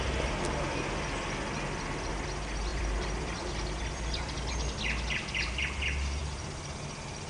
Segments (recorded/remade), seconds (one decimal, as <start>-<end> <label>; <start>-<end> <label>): 0.0-2.7 recorded; 2.7-4.5 remade; 4.5-7.3 recorded